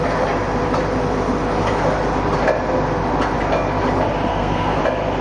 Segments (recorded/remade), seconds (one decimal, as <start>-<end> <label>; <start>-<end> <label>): 0.0-4.3 recorded; 4.3-4.8 remade; 4.8-5.2 recorded